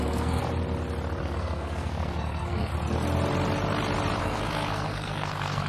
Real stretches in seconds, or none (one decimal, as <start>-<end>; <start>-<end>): 0.4-1.2; 2.7-4.2

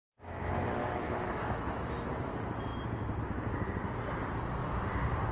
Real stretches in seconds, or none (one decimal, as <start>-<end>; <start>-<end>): 0.0-0.8; 2.1-5.3

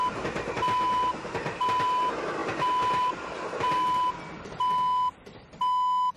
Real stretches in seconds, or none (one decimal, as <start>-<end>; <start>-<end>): 0.0-6.2